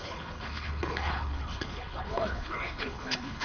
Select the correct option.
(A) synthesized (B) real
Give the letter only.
A